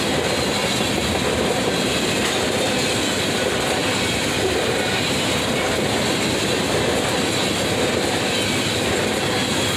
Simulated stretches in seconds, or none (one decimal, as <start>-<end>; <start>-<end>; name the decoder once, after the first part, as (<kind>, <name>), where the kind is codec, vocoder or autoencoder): none